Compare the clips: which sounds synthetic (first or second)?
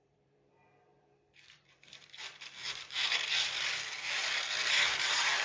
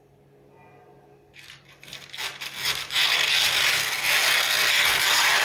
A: first